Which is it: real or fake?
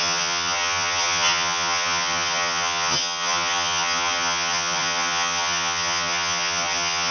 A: fake